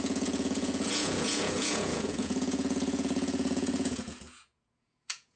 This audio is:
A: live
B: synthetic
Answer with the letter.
B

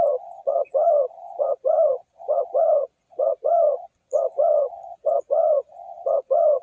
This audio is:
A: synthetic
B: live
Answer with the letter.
A